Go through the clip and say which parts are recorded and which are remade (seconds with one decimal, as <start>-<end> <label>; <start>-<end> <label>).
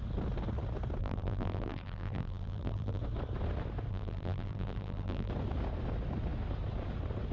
0.0-1.0 recorded; 1.0-3.0 remade; 3.0-3.9 recorded; 3.9-5.3 remade; 5.3-7.3 recorded